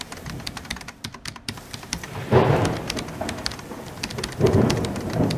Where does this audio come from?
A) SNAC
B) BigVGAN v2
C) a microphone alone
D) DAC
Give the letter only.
B